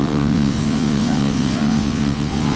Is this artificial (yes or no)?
yes